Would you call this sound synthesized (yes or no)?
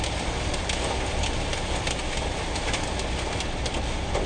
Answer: no